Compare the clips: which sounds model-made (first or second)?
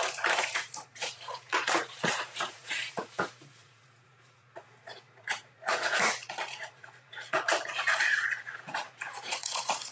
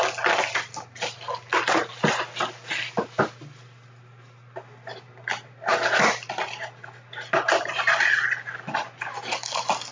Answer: first